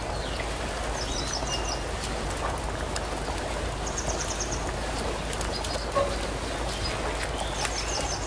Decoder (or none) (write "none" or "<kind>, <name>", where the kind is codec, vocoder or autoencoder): none